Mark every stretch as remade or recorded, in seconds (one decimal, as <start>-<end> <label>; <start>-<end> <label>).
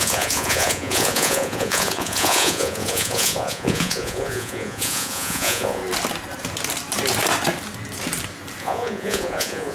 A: 0.0-5.8 remade; 5.8-8.6 recorded; 8.6-9.7 remade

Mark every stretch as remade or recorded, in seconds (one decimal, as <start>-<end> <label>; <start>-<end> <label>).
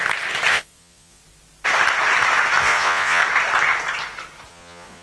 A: 0.0-0.5 recorded; 0.5-1.2 remade; 1.2-2.6 recorded; 2.6-3.2 remade; 3.2-4.5 recorded; 4.5-5.0 remade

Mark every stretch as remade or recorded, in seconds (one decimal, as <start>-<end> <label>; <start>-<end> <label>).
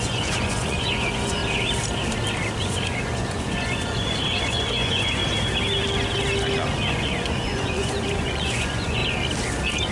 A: 0.0-1.4 remade; 1.4-2.6 recorded; 2.6-5.2 remade; 5.2-6.9 recorded; 6.9-9.0 remade; 9.0-9.9 recorded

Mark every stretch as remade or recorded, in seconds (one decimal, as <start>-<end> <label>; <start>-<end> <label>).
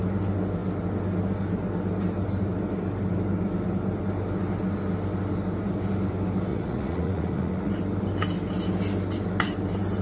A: 0.0-6.5 recorded; 6.5-7.7 remade; 7.7-10.0 recorded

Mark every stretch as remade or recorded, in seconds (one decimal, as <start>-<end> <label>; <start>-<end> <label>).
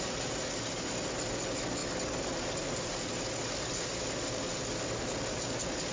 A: 0.0-5.9 recorded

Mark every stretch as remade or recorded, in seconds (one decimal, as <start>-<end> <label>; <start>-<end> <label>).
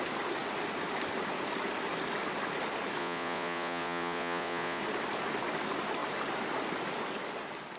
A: 0.0-3.0 recorded; 3.0-4.8 remade; 4.8-7.8 recorded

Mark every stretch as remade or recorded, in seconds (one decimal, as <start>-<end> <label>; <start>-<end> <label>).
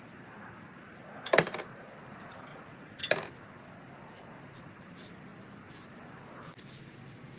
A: 0.0-2.5 recorded; 2.5-3.0 remade; 3.0-7.4 recorded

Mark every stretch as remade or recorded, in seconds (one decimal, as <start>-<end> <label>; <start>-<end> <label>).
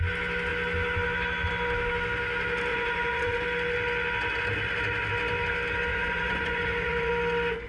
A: 0.0-2.7 recorded; 2.7-3.4 remade; 3.4-5.9 recorded; 5.9-7.1 remade; 7.1-7.7 recorded